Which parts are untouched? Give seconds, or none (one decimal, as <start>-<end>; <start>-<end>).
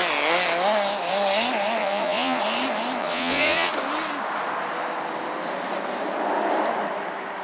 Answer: 0.0-1.8; 2.4-3.0; 3.7-7.4